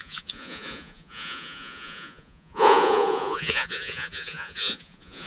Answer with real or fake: fake